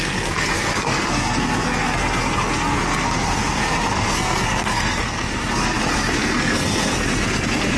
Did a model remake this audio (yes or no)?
yes